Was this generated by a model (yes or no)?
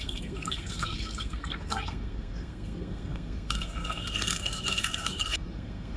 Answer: yes